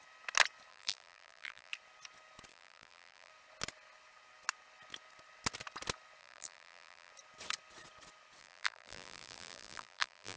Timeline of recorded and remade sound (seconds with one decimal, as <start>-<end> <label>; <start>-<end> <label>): 0.0-0.7 recorded; 0.7-1.7 remade; 1.7-2.5 recorded; 2.5-3.3 remade; 3.3-6.2 recorded; 6.2-7.1 remade; 7.1-8.4 recorded; 8.4-10.4 remade